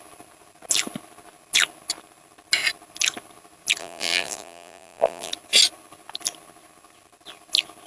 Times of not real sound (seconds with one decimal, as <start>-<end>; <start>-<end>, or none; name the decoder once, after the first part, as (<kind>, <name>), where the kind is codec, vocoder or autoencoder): 3.8-5.3 (vocoder, BigVGAN v2)